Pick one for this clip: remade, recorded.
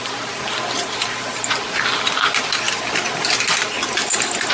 recorded